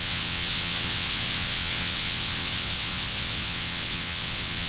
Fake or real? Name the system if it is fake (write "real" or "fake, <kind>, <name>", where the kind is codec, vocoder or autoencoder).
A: fake, vocoder, WaveNeXt